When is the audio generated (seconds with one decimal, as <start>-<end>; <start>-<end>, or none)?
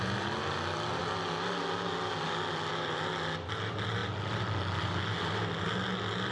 none